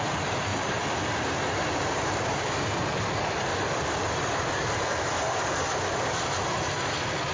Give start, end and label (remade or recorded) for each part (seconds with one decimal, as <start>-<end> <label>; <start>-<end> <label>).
0.0-0.5 recorded; 0.5-2.1 remade; 2.1-3.5 recorded; 3.5-6.6 remade; 6.6-7.3 recorded